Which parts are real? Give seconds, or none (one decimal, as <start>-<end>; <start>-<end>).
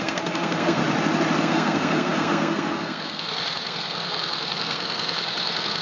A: 0.8-1.4